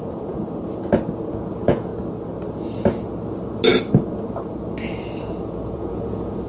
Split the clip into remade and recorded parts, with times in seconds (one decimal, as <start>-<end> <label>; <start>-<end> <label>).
0.0-0.4 remade; 0.4-1.5 recorded; 1.5-1.9 remade; 1.9-5.2 recorded; 5.2-6.5 remade